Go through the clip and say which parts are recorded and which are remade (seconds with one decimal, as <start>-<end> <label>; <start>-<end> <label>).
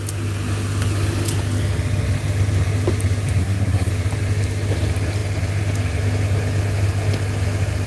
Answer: 0.0-3.4 recorded; 3.4-3.9 remade; 3.9-7.9 recorded